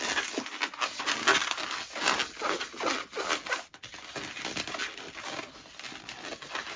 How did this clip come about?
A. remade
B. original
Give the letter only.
B